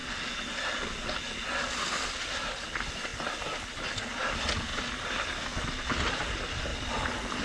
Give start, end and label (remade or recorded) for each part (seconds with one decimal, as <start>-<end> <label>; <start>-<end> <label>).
0.0-1.8 recorded; 1.8-3.1 remade; 3.1-4.0 recorded; 4.0-4.7 remade; 4.7-6.1 recorded; 6.1-7.4 remade